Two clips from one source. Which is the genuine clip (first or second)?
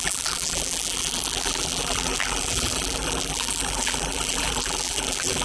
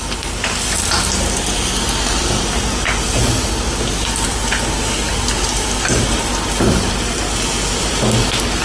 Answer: second